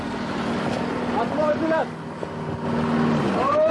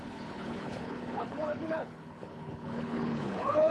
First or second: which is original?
first